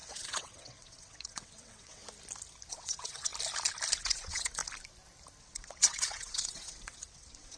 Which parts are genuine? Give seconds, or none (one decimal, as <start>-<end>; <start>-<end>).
2.0-2.7; 3.3-4.0; 4.6-5.4